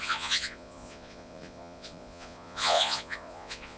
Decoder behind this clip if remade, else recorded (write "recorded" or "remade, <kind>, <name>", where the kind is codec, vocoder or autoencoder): remade, vocoder, Vocos